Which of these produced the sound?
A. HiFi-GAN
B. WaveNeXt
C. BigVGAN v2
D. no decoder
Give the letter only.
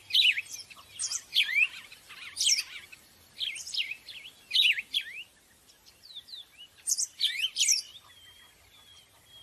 C